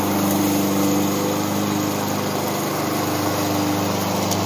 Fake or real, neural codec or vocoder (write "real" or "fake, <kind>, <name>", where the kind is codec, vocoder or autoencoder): real